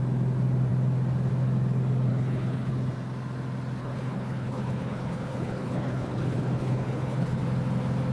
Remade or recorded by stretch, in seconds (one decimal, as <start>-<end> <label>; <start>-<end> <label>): 0.0-2.1 recorded; 2.1-2.7 remade; 2.7-3.8 recorded; 3.8-7.4 remade; 7.4-8.1 recorded